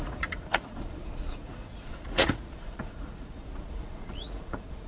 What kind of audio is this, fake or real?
fake